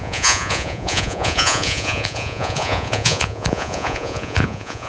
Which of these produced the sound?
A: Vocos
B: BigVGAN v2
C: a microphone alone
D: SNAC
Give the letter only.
A